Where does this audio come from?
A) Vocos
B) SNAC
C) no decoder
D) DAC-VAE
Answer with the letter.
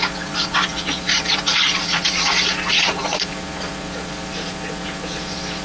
A